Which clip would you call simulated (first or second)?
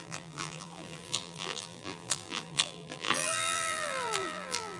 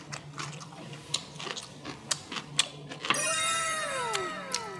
first